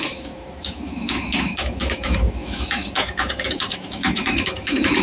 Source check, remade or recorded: remade